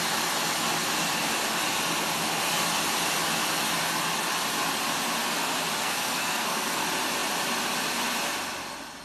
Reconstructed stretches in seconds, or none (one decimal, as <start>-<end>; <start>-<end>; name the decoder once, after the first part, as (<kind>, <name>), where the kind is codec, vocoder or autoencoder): 5.8-6.8 (codec, SNAC)